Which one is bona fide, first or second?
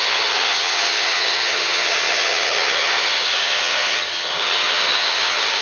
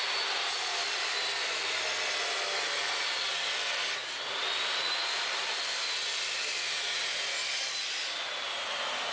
second